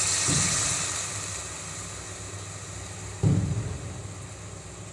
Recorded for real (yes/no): yes